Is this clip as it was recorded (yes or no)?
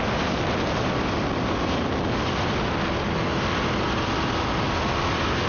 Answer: yes